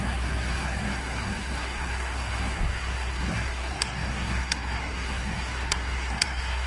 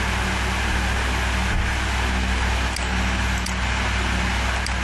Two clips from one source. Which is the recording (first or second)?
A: second